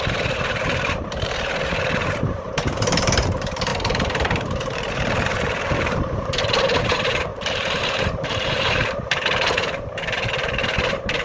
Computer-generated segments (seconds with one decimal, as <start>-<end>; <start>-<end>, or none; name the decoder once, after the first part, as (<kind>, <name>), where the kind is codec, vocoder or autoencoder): 0.0-7.3 (vocoder, BigVGAN v2); 7.8-11.2